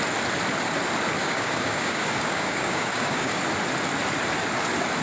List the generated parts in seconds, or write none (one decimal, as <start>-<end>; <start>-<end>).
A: 1.2-3.4